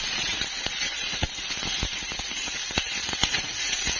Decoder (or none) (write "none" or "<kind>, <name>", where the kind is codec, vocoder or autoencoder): vocoder, Vocos